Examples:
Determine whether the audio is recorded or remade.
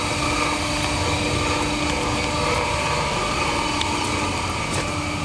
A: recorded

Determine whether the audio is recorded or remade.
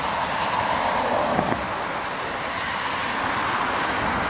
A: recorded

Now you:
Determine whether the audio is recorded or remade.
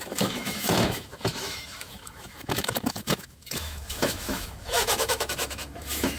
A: remade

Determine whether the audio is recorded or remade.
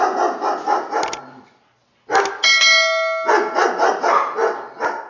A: recorded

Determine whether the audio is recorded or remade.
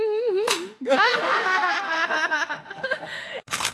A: remade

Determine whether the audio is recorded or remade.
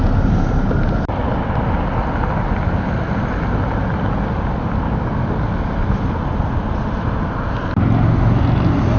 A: recorded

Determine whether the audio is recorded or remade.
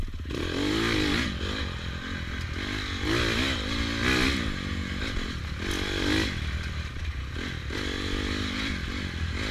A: recorded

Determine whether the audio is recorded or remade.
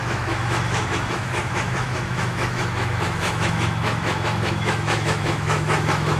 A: remade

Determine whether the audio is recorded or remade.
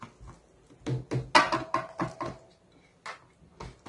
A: recorded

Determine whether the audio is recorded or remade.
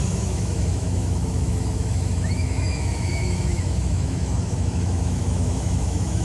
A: remade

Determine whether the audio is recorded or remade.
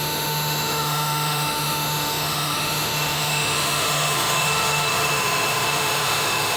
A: remade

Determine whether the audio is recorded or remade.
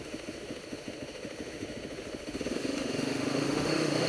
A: remade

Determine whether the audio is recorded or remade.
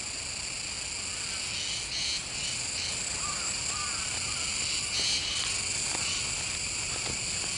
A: recorded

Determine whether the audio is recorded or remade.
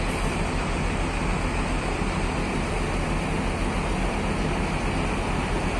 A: recorded